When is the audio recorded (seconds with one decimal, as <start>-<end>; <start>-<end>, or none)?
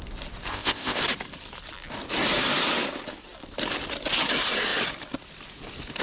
0.0-0.5; 1.0-6.0